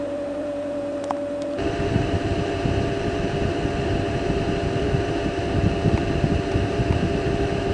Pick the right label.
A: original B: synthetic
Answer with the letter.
B